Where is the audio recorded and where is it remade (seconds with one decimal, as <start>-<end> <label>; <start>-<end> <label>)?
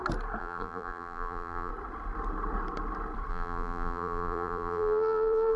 0.0-0.4 recorded; 0.4-1.7 remade; 1.7-3.3 recorded; 3.3-5.6 remade